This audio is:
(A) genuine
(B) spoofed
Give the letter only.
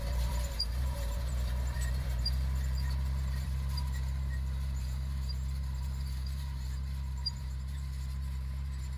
B